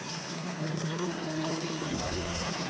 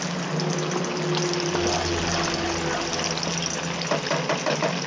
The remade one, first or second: first